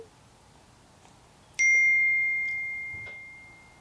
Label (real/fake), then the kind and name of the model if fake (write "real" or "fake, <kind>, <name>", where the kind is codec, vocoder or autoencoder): real